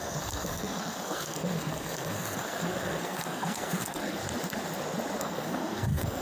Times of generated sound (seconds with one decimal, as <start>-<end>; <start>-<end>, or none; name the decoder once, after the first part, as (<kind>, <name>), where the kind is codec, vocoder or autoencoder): 0.0-4.2 (codec, SNAC); 5.2-6.2